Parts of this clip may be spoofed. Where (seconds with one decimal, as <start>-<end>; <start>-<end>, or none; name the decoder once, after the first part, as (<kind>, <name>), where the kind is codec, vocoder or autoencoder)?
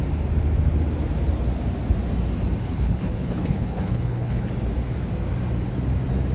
2.6-4.5 (codec, HILCodec)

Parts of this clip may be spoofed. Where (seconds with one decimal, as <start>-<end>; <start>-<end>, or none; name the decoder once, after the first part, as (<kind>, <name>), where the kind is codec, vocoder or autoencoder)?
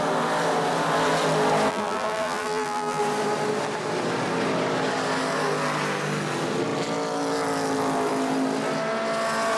1.7-3.0 (vocoder, BigVGAN v2)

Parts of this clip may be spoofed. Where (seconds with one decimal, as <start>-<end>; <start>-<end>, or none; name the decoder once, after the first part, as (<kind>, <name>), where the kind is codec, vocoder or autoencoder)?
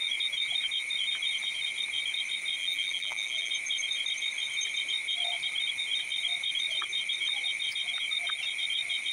2.6-3.5 (vocoder, BigVGAN v2)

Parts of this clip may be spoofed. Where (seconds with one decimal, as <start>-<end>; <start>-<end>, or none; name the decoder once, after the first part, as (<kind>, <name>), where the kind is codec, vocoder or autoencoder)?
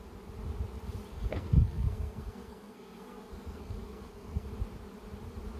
1.1-4.5 (codec, SNAC)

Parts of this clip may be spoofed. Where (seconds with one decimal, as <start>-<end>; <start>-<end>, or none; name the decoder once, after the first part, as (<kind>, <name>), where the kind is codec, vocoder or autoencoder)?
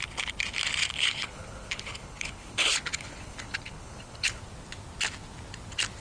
0.8-4.4 (codec, HILCodec)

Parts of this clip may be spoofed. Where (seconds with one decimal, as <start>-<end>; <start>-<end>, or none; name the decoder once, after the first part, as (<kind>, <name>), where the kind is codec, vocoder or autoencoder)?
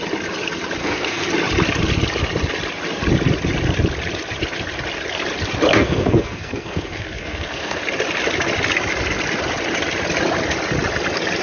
0.8-1.3 (codec, SNAC); 5.7-7.8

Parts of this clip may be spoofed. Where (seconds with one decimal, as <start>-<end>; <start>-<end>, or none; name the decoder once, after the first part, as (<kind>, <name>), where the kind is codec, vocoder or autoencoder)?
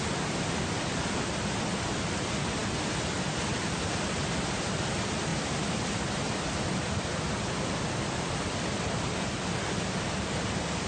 none